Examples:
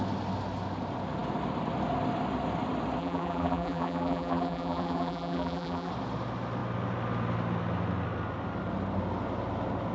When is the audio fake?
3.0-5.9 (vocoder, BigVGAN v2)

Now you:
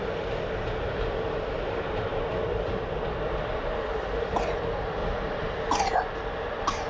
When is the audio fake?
2.1-4.6 (vocoder, BigVGAN v2); 5.0-5.5

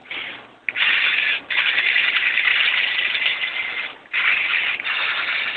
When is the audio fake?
2.5-4.1 (vocoder, BigVGAN v2); 4.5-5.1

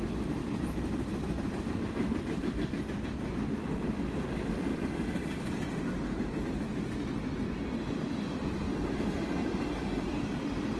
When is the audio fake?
0.4-1.6 (vocoder, BigVGAN v2)

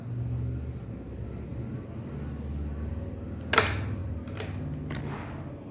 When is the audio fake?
none

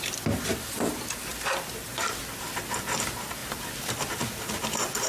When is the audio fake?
1.3-2.2 (vocoder, BigVGAN v2); 3.4-5.1

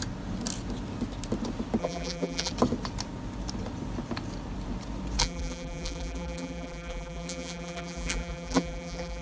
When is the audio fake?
1.8-2.5 (vocoder, BigVGAN v2); 5.2-9.2